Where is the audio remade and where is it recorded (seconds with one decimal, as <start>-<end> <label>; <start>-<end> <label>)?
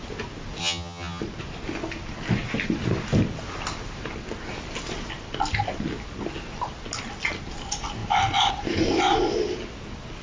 0.0-0.6 recorded; 0.6-1.2 remade; 1.2-10.2 recorded